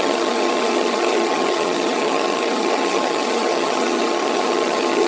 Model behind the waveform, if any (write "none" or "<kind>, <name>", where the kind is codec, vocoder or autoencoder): vocoder, HiFi-GAN